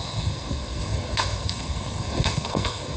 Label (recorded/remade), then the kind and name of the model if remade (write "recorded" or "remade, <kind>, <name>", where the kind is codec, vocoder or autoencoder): remade, codec, SNAC